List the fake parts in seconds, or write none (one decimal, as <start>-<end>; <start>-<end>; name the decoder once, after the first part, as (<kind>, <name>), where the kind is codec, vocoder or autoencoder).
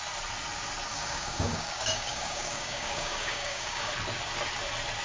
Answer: 0.9-3.9 (codec, DAC)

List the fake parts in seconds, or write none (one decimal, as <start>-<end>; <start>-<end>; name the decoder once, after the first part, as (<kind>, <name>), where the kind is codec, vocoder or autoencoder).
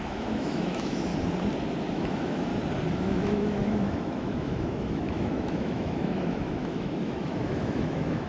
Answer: 0.0-1.1 (autoencoder, DAC-VAE); 1.9-2.5; 3.0-8.3